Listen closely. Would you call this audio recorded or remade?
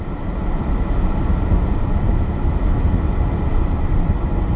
recorded